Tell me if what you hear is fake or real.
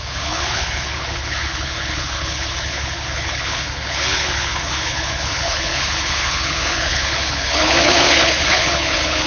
fake